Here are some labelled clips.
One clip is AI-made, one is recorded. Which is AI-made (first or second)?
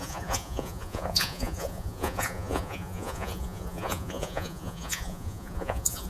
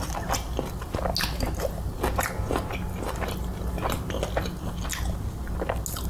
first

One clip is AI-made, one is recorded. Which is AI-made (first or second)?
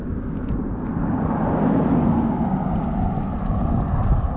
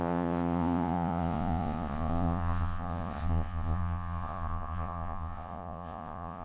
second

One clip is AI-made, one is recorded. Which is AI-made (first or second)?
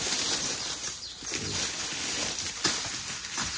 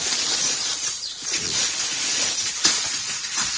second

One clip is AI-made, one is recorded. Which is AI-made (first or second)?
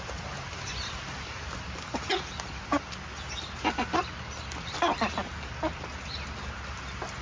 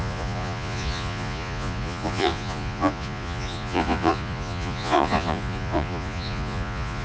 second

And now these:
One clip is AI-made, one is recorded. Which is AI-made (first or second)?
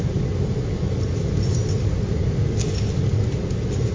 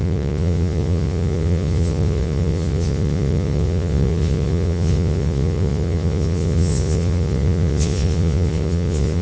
second